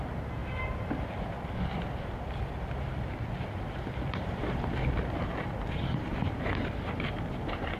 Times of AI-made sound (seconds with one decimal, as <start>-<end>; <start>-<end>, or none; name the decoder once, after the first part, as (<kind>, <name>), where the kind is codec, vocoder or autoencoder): none

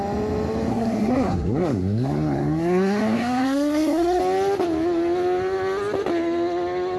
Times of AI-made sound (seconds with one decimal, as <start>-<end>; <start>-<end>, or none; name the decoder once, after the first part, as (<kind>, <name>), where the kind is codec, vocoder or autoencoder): 0.7-4.2 (codec, SNAC)

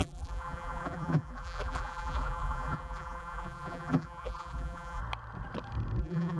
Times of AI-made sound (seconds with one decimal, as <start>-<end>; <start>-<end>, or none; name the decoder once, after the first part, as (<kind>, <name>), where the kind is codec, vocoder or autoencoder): 0.0-5.0 (vocoder, BigVGAN v2); 6.0-6.4